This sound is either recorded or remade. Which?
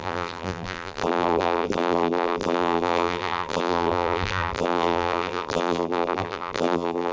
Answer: remade